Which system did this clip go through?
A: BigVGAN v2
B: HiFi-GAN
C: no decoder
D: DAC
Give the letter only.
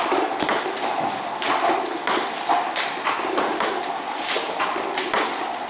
C